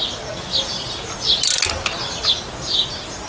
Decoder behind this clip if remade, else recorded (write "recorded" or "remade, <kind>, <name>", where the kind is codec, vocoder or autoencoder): recorded